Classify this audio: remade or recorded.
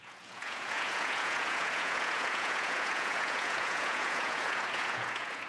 remade